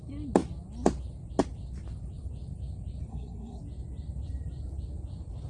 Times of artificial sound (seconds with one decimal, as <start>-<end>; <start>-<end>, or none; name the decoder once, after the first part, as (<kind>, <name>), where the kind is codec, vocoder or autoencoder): 3.1-3.6 (codec, SNAC)